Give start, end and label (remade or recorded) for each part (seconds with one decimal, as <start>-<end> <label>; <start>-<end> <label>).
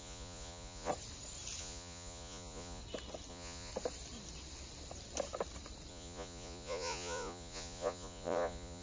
0.0-0.9 remade; 0.9-1.6 recorded; 1.6-2.8 remade; 2.8-3.3 recorded; 3.3-3.7 remade; 3.7-5.9 recorded; 5.9-8.8 remade